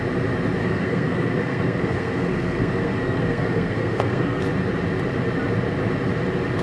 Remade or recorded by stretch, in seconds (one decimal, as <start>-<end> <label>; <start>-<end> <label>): 0.0-0.6 recorded; 0.6-4.4 remade; 4.4-6.6 recorded